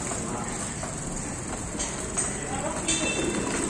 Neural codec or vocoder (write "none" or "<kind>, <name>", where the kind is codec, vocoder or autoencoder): none